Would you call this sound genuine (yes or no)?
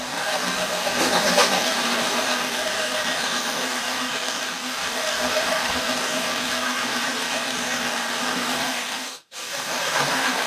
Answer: no